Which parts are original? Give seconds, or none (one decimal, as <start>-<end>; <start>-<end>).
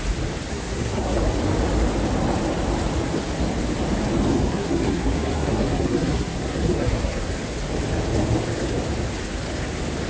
0.0-0.5; 1.2-4.3; 7.3-10.1